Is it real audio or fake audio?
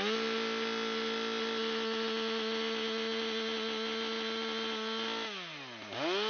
real